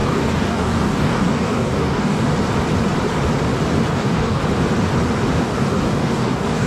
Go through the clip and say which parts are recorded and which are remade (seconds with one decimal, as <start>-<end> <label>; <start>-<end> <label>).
0.0-2.3 remade; 2.3-3.9 recorded; 3.9-4.4 remade; 4.4-5.4 recorded; 5.4-6.7 remade